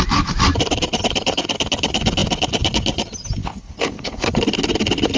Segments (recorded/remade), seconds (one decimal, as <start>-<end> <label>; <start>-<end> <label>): 0.0-3.4 recorded; 3.4-4.3 remade; 4.3-5.2 recorded